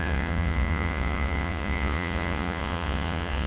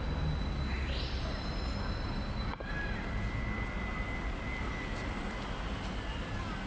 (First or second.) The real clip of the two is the second